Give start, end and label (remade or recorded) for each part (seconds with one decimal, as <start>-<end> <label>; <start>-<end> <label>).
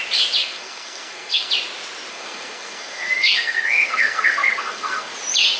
0.0-0.4 recorded; 0.4-1.5 remade; 1.5-2.1 recorded; 2.1-5.1 remade; 5.1-5.6 recorded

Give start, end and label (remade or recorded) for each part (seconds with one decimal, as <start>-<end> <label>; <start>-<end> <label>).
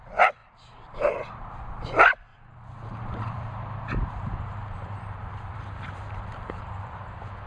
0.0-0.4 recorded; 0.4-1.5 remade; 1.5-2.3 recorded; 2.3-6.8 remade; 6.8-7.5 recorded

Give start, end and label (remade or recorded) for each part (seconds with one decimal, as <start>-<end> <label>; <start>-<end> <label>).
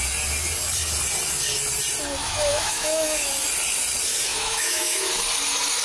0.0-2.2 recorded; 2.2-3.3 remade; 3.3-4.3 recorded; 4.3-5.1 remade; 5.1-5.8 recorded